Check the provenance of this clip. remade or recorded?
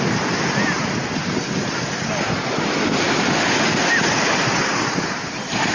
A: recorded